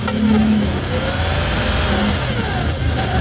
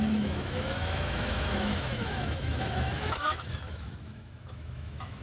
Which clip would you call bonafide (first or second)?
first